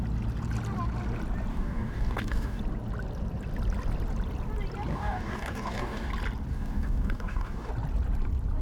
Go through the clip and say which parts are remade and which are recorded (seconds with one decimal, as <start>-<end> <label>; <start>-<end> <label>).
0.0-1.5 recorded; 1.5-2.6 remade; 2.6-4.9 recorded; 4.9-6.1 remade; 6.1-6.5 recorded; 6.5-7.7 remade; 7.7-8.6 recorded